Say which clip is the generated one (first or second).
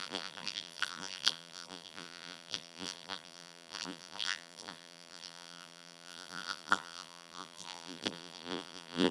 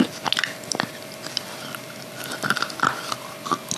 first